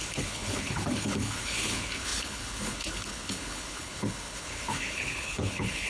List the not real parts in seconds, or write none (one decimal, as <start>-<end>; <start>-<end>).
0.0-5.9